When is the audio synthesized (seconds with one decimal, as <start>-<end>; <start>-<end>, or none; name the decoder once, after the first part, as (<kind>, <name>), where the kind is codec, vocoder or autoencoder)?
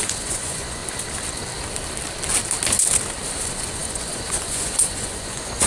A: 0.0-0.8 (vocoder, Vocos); 3.4-5.7